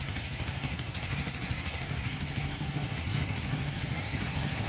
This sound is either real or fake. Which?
fake